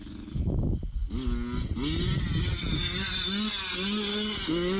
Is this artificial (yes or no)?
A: no